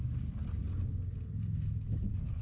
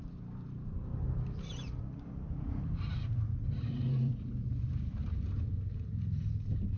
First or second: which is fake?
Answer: second